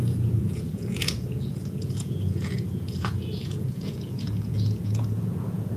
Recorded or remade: remade